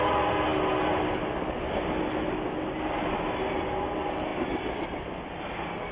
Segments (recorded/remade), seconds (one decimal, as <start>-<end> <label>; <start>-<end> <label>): 0.0-5.9 recorded

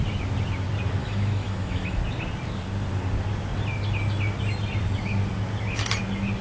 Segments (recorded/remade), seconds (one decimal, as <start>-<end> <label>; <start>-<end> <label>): 0.0-1.0 recorded; 1.0-2.0 remade; 2.0-6.4 recorded

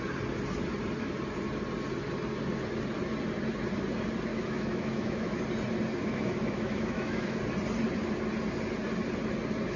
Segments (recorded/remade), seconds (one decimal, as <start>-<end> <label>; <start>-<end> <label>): 0.0-4.3 recorded; 4.3-5.4 remade; 5.4-6.0 recorded; 6.0-7.4 remade; 7.4-9.8 recorded